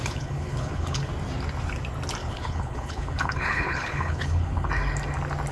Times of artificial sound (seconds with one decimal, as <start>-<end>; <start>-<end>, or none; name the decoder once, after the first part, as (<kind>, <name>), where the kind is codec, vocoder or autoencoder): 0.0-1.1 (codec, HILCodec); 2.2-4.7